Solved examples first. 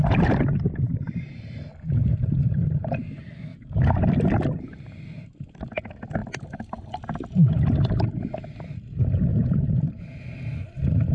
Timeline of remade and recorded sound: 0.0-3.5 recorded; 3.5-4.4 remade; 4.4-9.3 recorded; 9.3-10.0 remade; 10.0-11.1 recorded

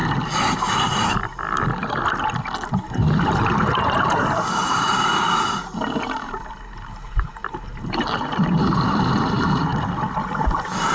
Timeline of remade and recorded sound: 0.0-0.7 recorded; 0.7-1.2 remade; 1.2-2.7 recorded; 2.7-9.7 remade; 9.7-10.4 recorded; 10.4-10.9 remade

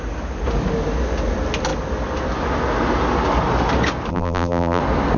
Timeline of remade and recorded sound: 0.0-4.1 recorded; 4.1-4.8 remade; 4.8-5.2 recorded